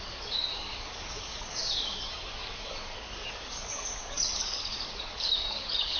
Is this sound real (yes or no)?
no